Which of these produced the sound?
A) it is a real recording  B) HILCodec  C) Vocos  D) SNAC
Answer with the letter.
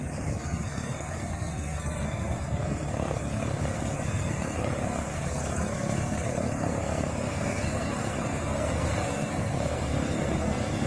D